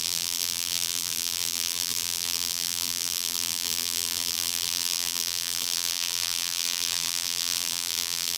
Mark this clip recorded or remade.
remade